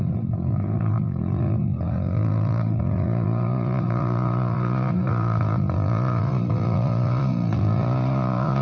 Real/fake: fake